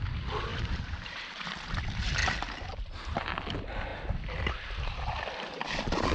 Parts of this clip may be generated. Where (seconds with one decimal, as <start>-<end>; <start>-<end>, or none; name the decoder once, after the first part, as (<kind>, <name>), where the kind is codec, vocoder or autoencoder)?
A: 0.5-1.4 (vocoder, BigVGAN v2)